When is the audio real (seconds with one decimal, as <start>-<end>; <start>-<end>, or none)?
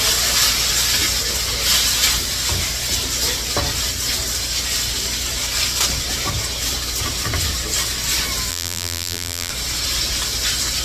0.0-8.5; 9.5-10.8